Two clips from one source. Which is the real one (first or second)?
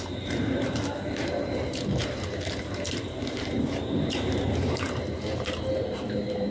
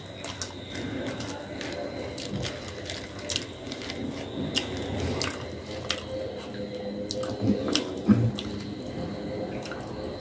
second